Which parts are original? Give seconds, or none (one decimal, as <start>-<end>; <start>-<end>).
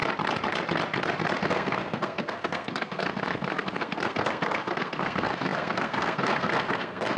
0.0-1.4